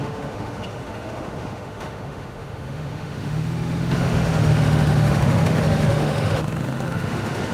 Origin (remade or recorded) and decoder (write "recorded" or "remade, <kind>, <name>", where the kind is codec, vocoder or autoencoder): remade, autoencoder, DAC-VAE